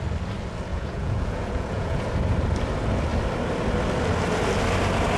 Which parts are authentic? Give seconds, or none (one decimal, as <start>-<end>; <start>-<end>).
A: 0.0-0.7; 2.1-5.2